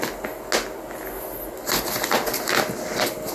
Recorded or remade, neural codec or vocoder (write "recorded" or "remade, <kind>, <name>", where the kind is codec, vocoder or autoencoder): recorded